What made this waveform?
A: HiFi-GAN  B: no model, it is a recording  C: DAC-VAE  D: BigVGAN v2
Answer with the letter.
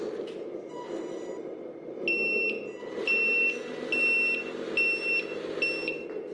B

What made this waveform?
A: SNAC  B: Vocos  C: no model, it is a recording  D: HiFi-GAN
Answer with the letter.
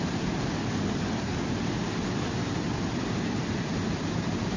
C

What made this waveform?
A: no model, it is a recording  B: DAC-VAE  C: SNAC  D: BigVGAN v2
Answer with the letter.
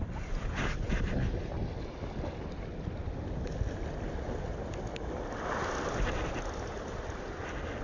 A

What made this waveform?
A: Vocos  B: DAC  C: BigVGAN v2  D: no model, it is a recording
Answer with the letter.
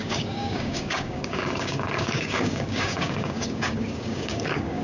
B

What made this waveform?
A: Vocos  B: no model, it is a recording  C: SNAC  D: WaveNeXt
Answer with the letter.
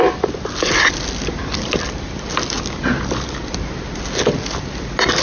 B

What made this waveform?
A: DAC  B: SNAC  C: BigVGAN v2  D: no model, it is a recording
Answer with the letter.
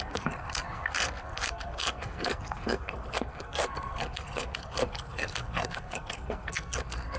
B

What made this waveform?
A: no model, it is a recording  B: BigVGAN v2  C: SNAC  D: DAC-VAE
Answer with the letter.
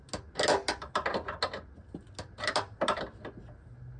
A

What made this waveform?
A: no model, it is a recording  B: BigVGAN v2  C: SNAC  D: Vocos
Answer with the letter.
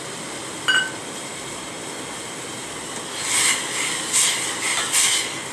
A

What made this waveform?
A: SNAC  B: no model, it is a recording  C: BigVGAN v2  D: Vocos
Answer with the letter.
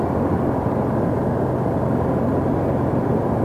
B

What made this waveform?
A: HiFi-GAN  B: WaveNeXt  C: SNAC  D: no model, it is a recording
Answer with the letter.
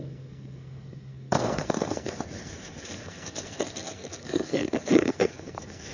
C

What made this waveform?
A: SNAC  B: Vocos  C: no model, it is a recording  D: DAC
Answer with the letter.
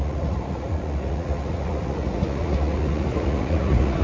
B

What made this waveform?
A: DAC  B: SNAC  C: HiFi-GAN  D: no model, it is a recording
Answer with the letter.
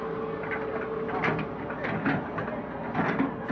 D